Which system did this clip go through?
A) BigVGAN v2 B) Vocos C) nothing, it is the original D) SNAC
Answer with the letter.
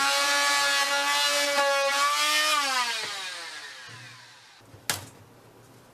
C